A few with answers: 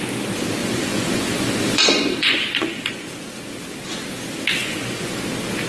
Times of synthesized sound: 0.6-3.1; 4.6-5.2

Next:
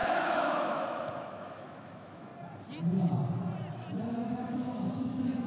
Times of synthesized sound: 0.0-2.3; 4.1-5.5

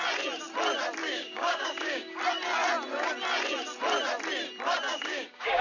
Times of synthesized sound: 1.0-2.2; 4.9-5.6

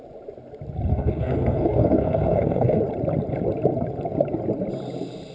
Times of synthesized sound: 0.9-2.8

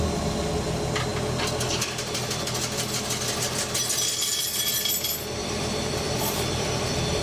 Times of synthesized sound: 5.4-7.2

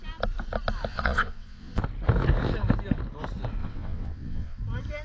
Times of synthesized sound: 0.9-1.8; 3.6-4.6

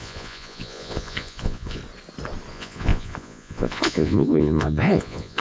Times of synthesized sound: 0.0-1.8; 2.5-5.4

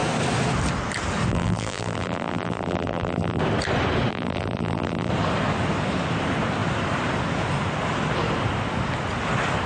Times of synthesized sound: 1.3-3.4; 4.1-5.1